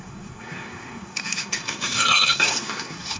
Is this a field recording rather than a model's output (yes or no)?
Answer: no